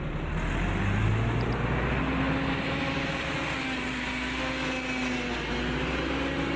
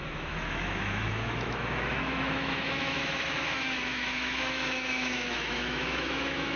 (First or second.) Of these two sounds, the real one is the first